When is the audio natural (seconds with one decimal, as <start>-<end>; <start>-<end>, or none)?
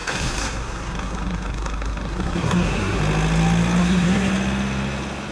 3.0-3.8; 4.3-5.3